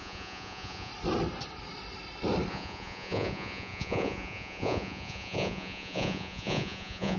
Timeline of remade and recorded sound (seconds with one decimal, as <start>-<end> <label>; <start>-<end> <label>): 0.0-0.9 remade; 0.9-2.5 recorded; 2.5-7.2 remade